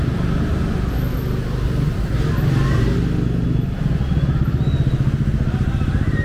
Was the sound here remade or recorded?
recorded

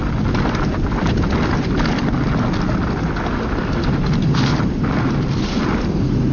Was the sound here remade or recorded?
recorded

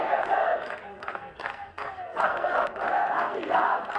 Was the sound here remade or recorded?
remade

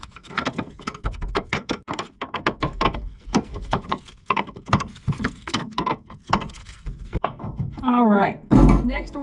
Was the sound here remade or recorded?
remade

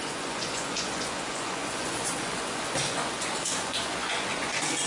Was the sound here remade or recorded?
remade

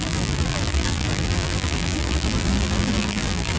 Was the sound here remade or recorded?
remade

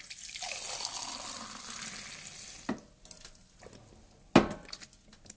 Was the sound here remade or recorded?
recorded